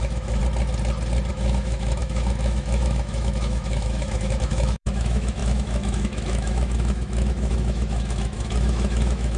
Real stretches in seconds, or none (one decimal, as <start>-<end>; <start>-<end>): 0.4-1.3